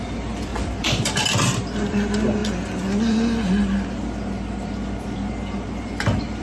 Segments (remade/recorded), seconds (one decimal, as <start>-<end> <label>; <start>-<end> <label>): 0.0-0.5 remade; 0.5-1.2 recorded; 1.2-2.4 remade; 2.4-6.4 recorded